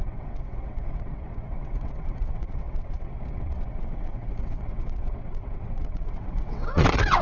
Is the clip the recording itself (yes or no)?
no